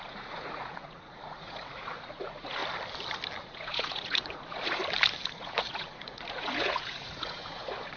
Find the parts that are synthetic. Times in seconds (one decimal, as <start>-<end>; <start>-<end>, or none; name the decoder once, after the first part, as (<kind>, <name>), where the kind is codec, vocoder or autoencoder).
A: 0.0-2.6 (vocoder, Vocos); 3.4-4.8; 5.3-8.0